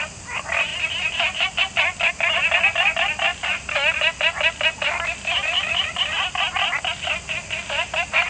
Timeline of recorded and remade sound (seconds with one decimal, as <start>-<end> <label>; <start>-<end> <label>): 0.0-8.3 recorded